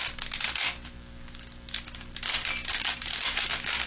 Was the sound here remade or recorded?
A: recorded